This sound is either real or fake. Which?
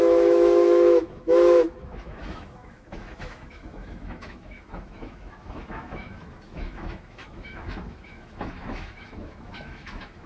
fake